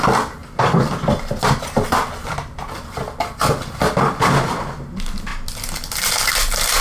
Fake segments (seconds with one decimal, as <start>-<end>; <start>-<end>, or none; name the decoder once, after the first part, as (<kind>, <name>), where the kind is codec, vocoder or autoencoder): none

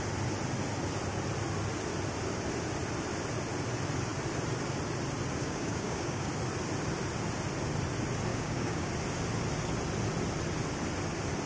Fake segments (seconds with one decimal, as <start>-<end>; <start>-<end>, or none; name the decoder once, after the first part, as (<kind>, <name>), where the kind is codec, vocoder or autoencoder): 5.4-6.3 (codec, DAC); 8.3-8.9

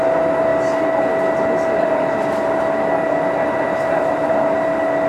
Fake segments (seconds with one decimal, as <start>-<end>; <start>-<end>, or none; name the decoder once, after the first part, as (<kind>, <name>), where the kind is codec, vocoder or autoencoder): none

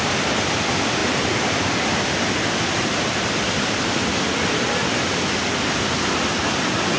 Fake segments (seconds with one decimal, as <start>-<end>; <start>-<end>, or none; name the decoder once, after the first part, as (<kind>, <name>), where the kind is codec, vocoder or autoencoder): none

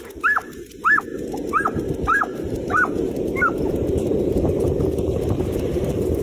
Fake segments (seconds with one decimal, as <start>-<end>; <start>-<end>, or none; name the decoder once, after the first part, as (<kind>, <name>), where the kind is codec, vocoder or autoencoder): 2.3-6.2 (vocoder, BigVGAN v2)

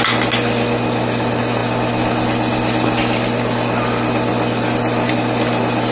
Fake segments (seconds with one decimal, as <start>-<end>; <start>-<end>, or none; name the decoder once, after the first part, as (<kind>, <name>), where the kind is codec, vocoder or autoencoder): none

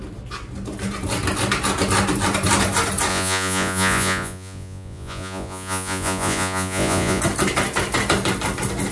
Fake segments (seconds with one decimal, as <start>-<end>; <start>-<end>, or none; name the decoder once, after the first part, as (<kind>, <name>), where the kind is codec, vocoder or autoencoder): 3.1-7.2 (vocoder, Vocos)